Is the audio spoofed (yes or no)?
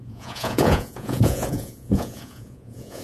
yes